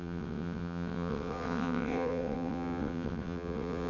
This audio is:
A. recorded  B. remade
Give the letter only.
B